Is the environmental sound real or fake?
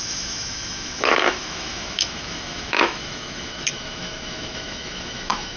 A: fake